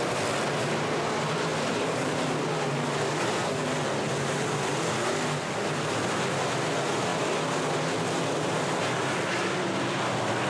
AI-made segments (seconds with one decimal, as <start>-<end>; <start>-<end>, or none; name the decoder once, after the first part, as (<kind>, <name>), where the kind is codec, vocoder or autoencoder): 1.5-2.1 (vocoder, BigVGAN v2)